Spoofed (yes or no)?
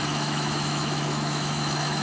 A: yes